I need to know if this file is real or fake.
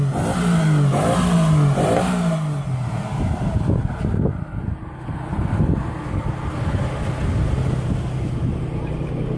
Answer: real